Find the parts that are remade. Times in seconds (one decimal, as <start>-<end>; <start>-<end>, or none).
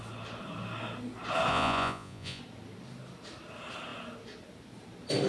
1.5-2.4